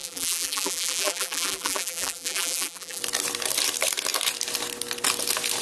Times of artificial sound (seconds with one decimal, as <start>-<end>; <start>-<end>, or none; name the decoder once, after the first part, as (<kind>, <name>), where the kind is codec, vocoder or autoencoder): 0.0-3.0 (vocoder, BigVGAN v2)